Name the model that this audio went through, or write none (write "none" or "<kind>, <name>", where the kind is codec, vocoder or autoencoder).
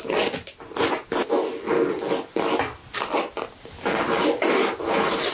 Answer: none